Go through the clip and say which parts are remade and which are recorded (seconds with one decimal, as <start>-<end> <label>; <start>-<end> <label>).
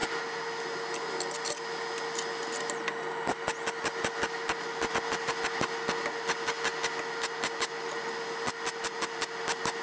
0.0-9.8 recorded